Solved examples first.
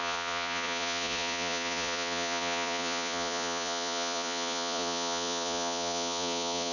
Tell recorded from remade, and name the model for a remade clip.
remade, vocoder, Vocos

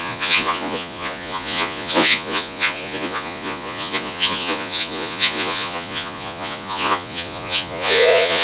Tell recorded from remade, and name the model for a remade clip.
remade, vocoder, Vocos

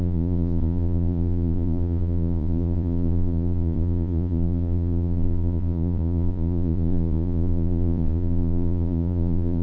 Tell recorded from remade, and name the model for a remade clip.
remade, vocoder, Vocos